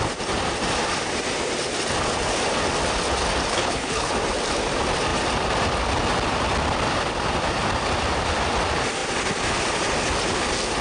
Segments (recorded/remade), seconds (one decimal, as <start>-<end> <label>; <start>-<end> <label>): 0.0-3.5 recorded; 3.5-4.1 remade; 4.1-10.8 recorded